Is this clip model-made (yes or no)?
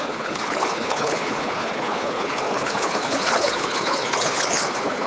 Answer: yes